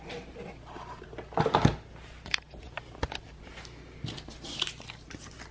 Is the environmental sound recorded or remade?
recorded